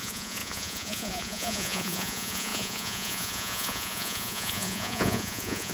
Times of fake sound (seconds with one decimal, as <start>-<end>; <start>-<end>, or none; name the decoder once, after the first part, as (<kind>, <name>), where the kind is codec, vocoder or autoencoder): 0.0-5.7 (vocoder, Vocos)